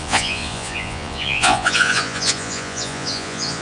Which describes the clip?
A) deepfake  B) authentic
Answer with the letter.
A